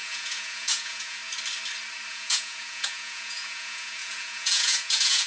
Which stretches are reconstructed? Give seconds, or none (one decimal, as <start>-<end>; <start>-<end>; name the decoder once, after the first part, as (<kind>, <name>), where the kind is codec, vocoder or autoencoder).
0.0-1.2 (vocoder, Vocos); 2.1-5.3